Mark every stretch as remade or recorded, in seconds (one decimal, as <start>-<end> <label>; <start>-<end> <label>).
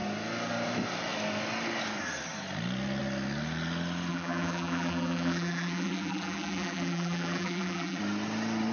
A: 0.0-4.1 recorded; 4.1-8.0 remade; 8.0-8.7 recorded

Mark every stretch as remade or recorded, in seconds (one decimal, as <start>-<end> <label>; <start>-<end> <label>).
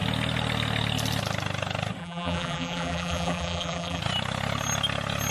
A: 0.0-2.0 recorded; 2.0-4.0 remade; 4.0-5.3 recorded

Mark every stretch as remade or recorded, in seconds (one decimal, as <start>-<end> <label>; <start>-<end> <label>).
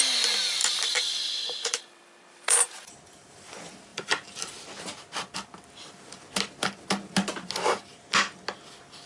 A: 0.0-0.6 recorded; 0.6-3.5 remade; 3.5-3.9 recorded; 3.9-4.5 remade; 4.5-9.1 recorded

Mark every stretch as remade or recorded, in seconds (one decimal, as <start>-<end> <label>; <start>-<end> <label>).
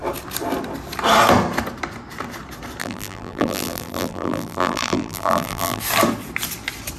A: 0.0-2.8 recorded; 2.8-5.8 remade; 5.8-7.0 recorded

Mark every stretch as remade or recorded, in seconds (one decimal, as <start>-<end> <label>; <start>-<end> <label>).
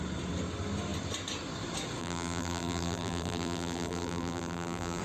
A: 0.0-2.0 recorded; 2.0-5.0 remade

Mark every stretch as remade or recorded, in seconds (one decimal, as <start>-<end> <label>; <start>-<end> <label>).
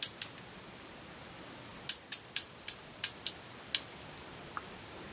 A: 0.0-5.1 recorded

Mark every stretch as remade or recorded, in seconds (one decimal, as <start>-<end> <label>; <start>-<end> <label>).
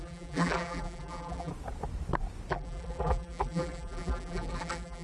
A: 0.0-1.5 remade; 1.5-2.5 recorded; 2.5-5.0 remade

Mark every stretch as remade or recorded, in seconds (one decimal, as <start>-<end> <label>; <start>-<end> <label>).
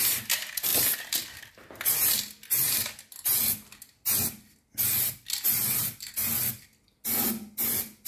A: 0.0-8.1 recorded